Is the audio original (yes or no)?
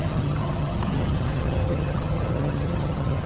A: no